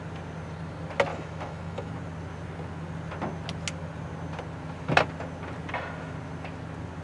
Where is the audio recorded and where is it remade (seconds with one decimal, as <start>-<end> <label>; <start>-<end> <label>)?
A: 0.0-1.1 recorded; 1.1-1.9 remade; 1.9-7.0 recorded